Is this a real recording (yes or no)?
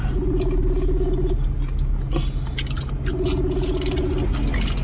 yes